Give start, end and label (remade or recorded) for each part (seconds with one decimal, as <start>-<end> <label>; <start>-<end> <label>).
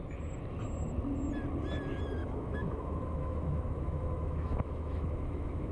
0.0-2.2 recorded; 2.2-5.7 remade